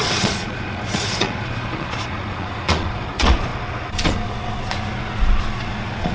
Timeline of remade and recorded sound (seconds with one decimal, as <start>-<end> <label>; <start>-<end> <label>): 0.0-6.1 remade